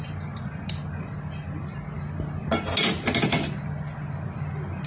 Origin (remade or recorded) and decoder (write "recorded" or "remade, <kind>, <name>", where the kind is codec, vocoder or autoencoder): recorded